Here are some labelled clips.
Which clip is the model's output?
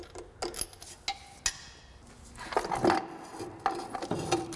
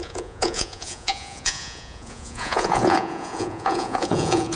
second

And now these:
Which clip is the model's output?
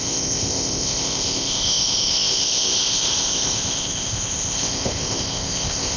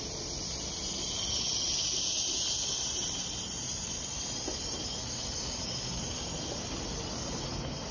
first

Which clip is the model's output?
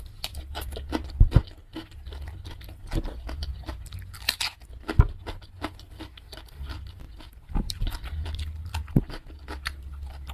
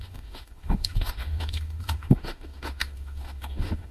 second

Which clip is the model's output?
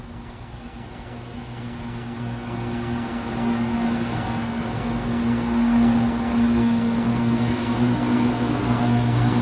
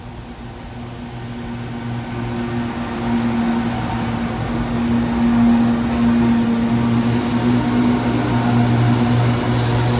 first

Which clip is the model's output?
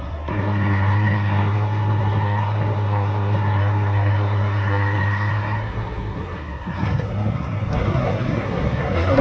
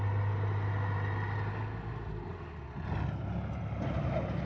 first